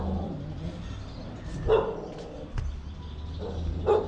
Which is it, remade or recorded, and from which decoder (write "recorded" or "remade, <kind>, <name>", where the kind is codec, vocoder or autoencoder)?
recorded